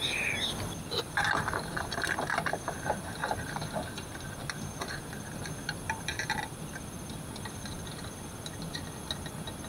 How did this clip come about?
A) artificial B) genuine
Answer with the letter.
B